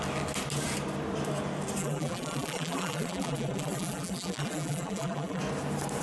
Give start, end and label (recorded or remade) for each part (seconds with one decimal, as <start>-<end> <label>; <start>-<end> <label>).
0.0-1.8 recorded; 1.8-5.4 remade; 5.4-6.0 recorded